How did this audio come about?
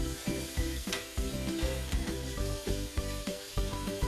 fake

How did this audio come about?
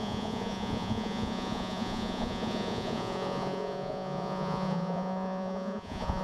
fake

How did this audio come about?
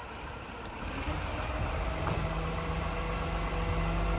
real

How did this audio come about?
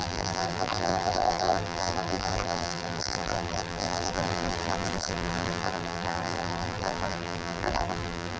fake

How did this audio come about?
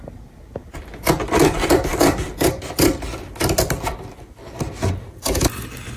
real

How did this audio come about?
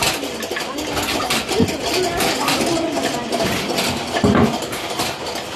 real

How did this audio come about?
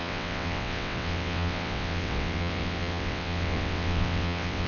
fake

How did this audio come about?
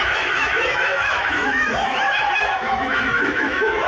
fake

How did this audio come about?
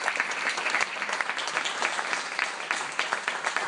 real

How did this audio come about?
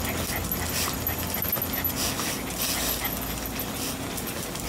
real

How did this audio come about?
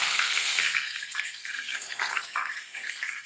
fake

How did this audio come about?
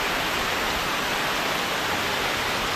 real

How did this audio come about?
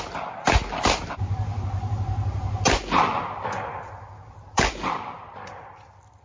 real